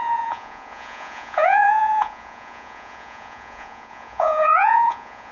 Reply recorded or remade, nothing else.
remade